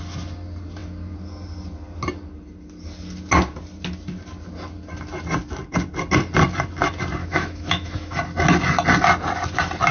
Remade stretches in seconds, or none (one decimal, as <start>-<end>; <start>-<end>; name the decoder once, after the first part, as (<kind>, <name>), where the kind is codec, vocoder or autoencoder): 7.2-8.2 (autoencoder, DAC-VAE)